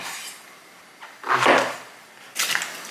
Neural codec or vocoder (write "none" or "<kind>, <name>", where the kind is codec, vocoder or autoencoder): none